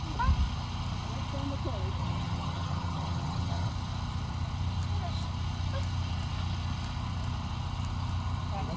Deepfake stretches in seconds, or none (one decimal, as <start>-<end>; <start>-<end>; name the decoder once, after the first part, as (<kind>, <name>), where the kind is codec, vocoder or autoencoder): 2.0-3.7 (vocoder, HiFi-GAN)